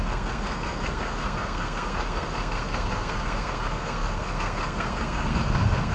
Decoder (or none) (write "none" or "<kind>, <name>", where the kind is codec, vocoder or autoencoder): codec, SNAC